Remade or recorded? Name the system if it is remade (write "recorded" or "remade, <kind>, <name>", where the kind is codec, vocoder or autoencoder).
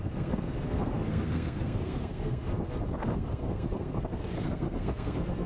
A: remade, codec, SNAC